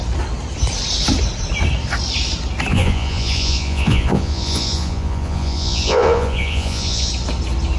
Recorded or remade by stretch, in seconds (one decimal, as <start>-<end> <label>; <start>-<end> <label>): 0.0-2.7 recorded; 2.7-7.1 remade; 7.1-7.8 recorded